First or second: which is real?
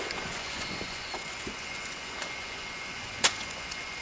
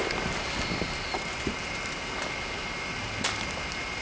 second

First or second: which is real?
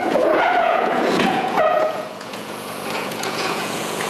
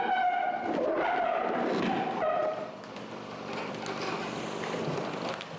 second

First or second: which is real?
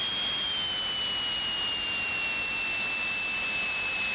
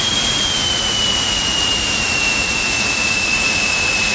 first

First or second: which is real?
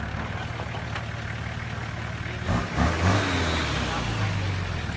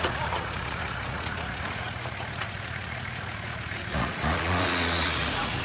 first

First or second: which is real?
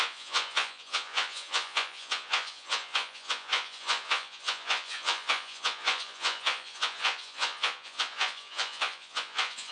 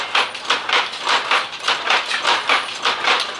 second